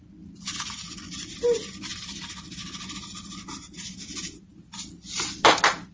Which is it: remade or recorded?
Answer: recorded